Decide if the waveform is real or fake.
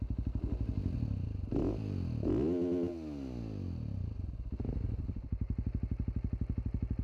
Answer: real